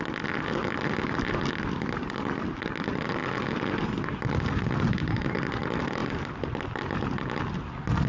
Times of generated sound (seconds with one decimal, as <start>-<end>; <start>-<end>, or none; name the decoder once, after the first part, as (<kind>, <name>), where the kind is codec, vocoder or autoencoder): none

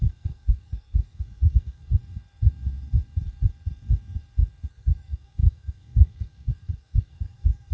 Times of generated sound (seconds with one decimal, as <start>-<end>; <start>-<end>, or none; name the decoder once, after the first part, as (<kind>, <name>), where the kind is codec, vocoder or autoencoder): 0.0-2.0 (codec, SNAC); 4.7-7.7

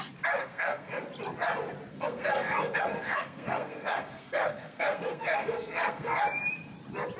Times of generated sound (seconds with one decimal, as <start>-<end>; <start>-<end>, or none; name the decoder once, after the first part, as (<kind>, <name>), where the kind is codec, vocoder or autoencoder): 0.4-1.1 (codec, SNAC); 1.9-6.2

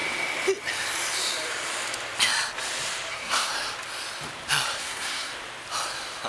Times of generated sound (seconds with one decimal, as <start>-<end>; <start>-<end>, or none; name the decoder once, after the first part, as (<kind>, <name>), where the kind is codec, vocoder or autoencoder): 3.1-3.5 (codec, SNAC); 4.8-5.3